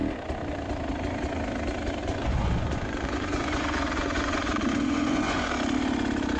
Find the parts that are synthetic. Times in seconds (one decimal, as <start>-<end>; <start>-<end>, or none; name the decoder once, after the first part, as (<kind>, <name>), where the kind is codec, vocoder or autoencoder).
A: 2.0-5.5 (vocoder, Vocos)